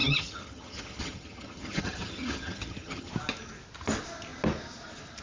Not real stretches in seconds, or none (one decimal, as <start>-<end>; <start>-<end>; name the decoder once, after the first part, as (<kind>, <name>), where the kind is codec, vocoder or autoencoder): 0.0-3.1 (vocoder, HiFi-GAN)